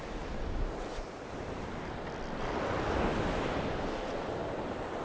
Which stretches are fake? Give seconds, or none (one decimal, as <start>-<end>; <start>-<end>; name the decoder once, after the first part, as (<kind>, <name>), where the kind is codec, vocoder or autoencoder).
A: none